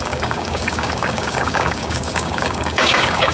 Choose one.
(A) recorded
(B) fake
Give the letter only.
B